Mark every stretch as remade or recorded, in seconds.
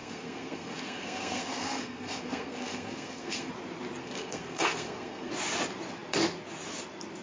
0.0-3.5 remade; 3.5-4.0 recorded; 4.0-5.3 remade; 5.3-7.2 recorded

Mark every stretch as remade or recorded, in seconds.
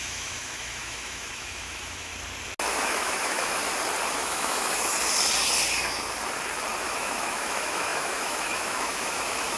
0.0-2.1 remade; 2.1-2.7 recorded; 2.7-3.6 remade; 3.6-4.1 recorded; 4.1-4.9 remade; 4.9-6.8 recorded; 6.8-9.6 remade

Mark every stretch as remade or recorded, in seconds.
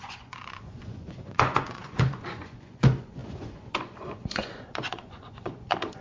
0.0-6.0 remade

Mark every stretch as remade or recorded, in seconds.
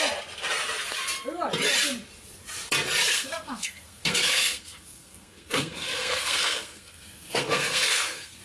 0.0-3.1 recorded; 3.1-8.4 remade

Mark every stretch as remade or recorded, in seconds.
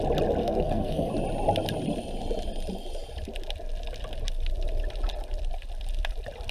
0.0-0.4 recorded; 0.4-1.1 remade; 1.1-6.5 recorded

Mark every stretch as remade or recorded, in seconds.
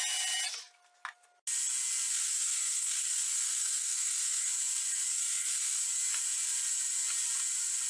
0.0-2.1 recorded; 2.1-4.5 remade; 4.5-5.1 recorded; 5.1-5.8 remade; 5.8-7.9 recorded